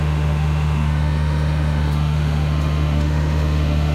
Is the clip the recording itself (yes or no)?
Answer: no